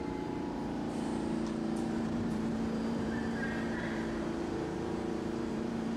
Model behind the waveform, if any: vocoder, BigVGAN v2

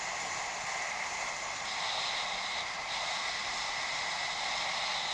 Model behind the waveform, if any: none